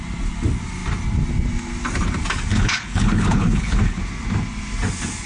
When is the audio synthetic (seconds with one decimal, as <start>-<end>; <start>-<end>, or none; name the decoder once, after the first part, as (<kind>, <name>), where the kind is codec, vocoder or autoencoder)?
2.5-4.0 (codec, HILCodec)